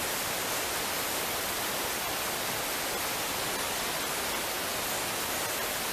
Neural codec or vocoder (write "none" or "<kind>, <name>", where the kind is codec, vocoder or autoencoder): none